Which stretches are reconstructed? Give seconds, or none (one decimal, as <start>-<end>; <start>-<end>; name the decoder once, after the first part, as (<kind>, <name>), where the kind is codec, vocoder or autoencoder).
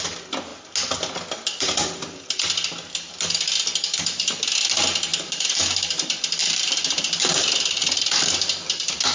5.1-5.6 (vocoder, BigVGAN v2); 6.4-8.2